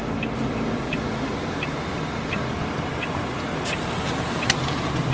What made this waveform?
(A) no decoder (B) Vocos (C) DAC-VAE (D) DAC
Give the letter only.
A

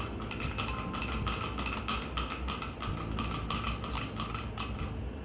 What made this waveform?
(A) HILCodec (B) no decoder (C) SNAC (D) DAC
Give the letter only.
B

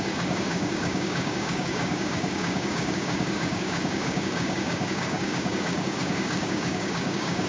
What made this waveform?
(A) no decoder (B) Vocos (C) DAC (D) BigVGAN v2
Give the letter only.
C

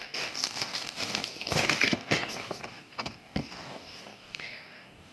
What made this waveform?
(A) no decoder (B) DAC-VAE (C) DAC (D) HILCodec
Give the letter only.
C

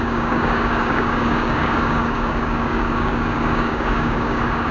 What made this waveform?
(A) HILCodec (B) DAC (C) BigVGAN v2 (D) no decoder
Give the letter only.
B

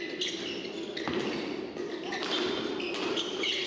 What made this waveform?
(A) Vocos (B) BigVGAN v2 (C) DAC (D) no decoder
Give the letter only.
D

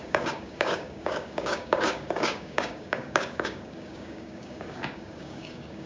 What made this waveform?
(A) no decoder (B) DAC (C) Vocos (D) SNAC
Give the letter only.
B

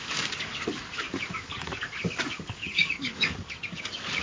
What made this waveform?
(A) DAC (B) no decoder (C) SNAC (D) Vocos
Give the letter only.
A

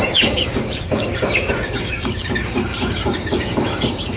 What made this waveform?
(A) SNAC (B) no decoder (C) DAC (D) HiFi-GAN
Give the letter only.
C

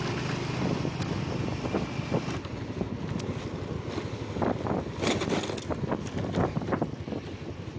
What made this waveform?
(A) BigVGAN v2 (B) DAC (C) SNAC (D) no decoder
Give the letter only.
D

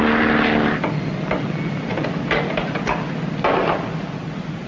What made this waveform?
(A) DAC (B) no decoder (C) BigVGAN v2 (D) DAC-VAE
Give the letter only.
B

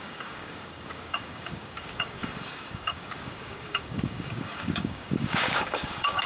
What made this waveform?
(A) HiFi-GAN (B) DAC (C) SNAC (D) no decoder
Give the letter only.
B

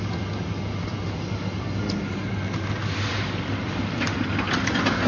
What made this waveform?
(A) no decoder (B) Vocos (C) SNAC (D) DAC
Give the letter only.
A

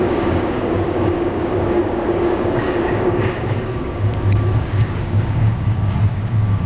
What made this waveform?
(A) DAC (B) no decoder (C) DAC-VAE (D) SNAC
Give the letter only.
A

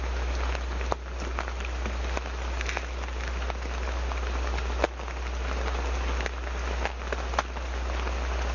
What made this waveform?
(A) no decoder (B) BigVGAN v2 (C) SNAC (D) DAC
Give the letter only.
A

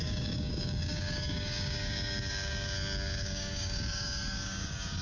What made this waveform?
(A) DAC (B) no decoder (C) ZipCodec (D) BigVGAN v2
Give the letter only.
A